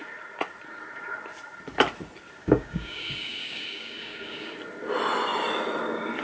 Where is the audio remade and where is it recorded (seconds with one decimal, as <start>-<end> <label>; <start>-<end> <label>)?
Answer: 0.0-2.4 recorded; 2.4-4.5 remade; 4.5-6.2 recorded

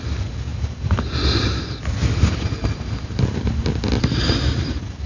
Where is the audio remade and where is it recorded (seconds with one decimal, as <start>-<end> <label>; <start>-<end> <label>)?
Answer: 0.0-5.1 recorded